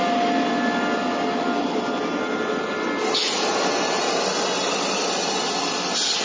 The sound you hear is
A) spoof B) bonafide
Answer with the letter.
B